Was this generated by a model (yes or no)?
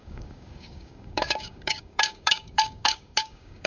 yes